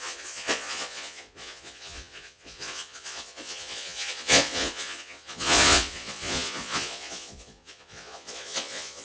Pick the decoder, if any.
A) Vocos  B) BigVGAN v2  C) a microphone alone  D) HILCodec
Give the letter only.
A